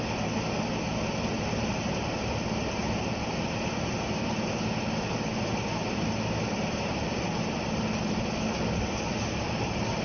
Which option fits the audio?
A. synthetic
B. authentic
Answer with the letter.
B